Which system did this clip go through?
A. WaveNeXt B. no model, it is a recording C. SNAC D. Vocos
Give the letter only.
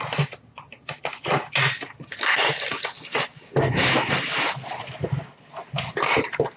B